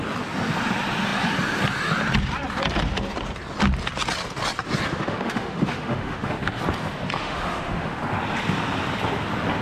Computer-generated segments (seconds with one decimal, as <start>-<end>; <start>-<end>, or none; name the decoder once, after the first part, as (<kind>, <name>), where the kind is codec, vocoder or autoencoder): 4.9-6.6 (autoencoder, DAC-VAE); 7.2-8.0